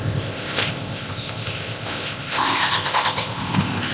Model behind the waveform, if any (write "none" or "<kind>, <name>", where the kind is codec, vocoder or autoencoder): codec, ZipCodec